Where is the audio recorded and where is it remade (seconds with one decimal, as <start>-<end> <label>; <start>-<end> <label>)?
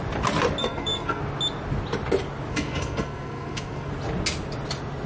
0.0-0.6 recorded; 0.6-1.2 remade; 1.2-2.5 recorded; 2.5-3.9 remade; 3.9-5.1 recorded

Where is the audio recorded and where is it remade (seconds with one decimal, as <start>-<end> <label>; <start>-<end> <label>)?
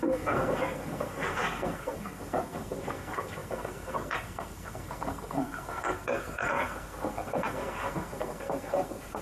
0.0-9.2 remade